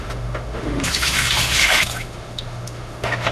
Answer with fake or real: fake